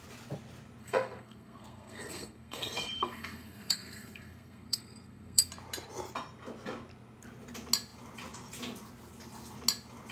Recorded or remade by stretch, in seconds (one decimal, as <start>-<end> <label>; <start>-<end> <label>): 0.0-0.8 recorded; 0.8-5.5 remade; 5.5-10.1 recorded